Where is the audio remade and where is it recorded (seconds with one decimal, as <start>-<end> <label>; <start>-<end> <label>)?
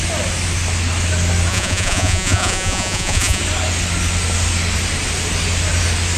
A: 0.0-1.5 recorded; 1.5-3.4 remade; 3.4-6.2 recorded